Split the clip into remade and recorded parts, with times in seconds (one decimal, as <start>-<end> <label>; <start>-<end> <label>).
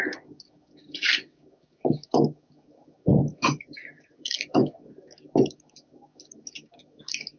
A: 0.0-7.4 remade